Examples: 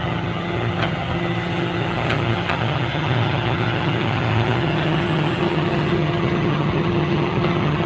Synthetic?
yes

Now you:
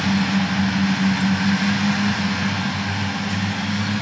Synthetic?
no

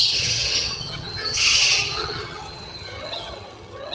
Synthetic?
yes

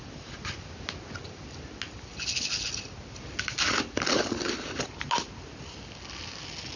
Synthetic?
no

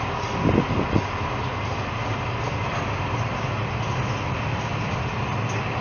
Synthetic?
no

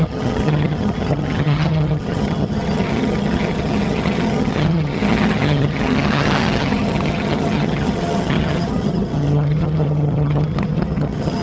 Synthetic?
yes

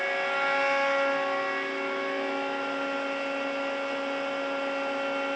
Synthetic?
no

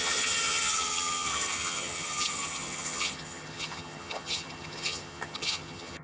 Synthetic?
yes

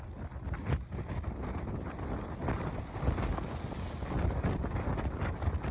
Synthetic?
no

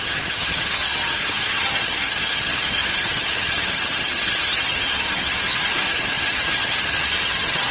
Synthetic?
yes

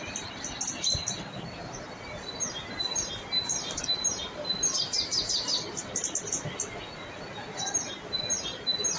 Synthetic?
no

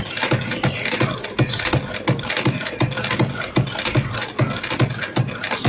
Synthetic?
no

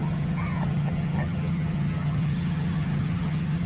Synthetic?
yes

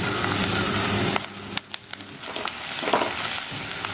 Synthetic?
no